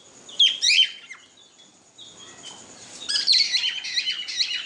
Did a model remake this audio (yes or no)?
no